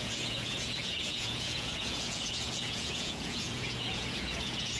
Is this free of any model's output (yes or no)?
no